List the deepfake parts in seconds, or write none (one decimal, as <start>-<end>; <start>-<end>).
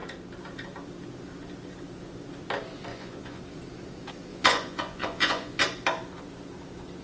2.9-3.4; 4.3-5.6